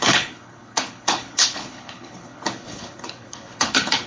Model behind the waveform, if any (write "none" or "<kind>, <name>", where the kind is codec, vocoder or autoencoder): codec, HILCodec